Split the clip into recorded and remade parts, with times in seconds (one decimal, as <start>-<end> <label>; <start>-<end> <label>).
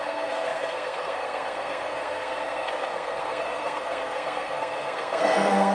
0.0-5.7 remade